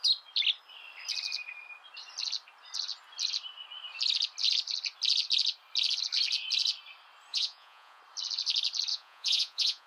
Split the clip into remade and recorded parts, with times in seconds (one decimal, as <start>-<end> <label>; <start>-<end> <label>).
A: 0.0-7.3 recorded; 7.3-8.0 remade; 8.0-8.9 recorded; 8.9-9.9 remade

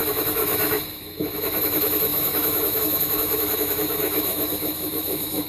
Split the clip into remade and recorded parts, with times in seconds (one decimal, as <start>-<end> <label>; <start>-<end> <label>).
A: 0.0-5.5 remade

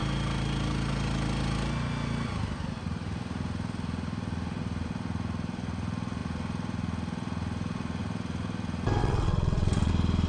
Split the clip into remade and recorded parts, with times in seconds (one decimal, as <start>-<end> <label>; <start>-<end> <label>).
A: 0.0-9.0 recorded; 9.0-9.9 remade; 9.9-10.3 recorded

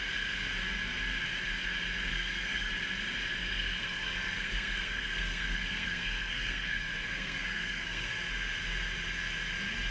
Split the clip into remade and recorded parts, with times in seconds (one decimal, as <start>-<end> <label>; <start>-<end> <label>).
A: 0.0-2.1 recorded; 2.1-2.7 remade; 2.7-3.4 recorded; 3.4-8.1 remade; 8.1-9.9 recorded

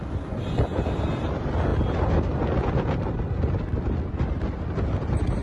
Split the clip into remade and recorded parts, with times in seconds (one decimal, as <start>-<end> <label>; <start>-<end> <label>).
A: 0.0-5.4 recorded